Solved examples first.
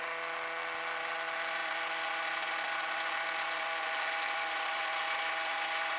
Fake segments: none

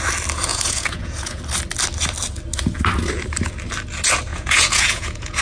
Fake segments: 0.5-1.4 (vocoder, Vocos); 4.3-5.4

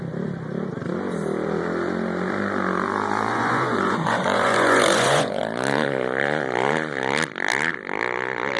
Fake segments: 3.3-5.4 (vocoder, Vocos)

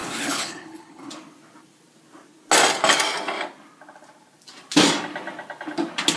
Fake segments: 0.0-1.1 (codec, HILCodec)

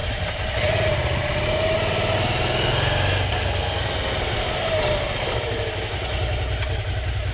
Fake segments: none

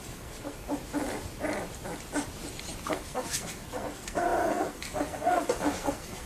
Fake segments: 0.0-0.7 (codec, SNAC); 2.9-6.3

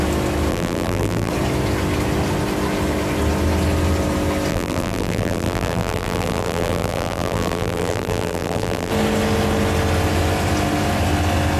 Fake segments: 0.5-1.3 (vocoder, BigVGAN v2); 4.5-8.9

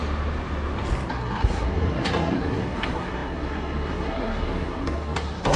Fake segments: 1.1-5.6 (codec, SNAC)